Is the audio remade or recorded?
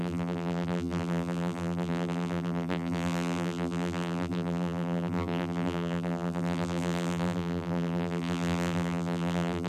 remade